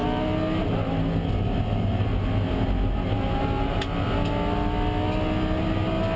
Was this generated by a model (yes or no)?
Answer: no